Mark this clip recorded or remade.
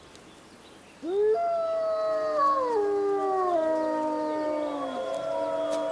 recorded